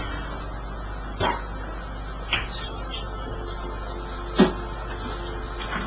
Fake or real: real